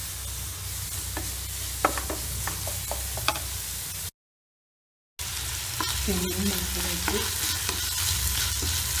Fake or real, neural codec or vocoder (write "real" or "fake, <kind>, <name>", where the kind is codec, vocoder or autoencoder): real